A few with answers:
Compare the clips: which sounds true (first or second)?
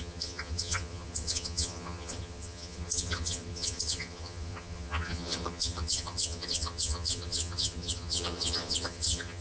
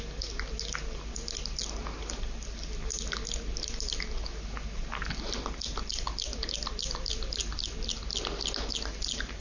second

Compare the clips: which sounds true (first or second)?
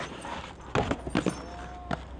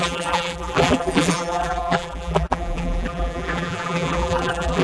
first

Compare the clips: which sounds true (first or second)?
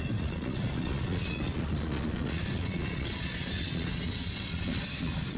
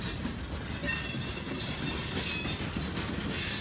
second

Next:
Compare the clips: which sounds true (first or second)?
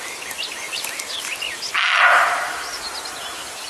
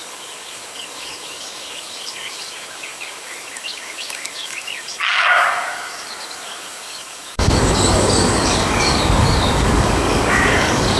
first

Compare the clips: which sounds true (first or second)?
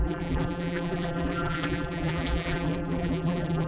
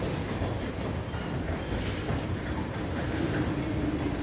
second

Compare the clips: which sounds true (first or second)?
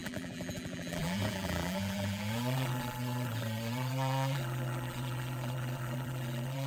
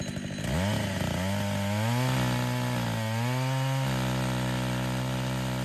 second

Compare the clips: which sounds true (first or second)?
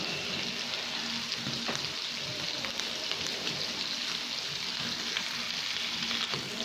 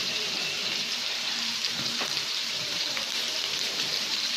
first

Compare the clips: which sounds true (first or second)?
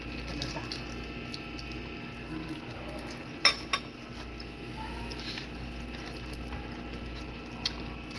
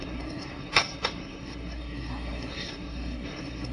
first